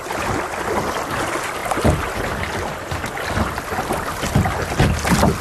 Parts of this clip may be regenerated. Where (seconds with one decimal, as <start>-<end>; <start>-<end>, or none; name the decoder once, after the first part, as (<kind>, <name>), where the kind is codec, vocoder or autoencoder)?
none